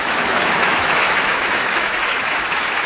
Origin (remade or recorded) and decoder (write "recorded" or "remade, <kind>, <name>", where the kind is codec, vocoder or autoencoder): remade, autoencoder, DAC-VAE